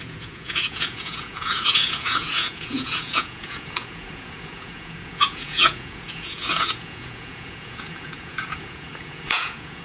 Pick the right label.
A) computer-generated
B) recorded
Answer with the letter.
A